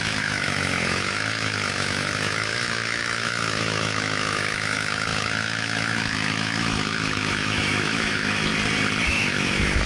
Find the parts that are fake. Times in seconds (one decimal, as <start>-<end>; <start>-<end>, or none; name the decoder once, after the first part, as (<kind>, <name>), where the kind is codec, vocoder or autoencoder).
0.0-8.5 (autoencoder, DAC-VAE); 9.1-9.9

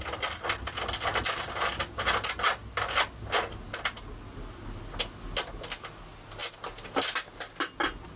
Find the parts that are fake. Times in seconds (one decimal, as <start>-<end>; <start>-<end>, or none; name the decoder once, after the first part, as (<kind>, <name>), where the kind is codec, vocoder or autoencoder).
none